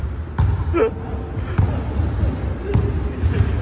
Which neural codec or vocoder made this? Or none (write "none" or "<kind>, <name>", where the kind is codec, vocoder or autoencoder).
none